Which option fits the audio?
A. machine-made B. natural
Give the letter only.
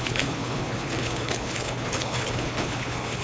A